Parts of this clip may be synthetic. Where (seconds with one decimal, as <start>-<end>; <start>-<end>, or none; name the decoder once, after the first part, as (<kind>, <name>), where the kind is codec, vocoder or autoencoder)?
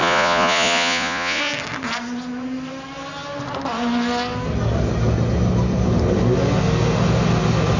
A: 0.0-1.4 (vocoder, Vocos)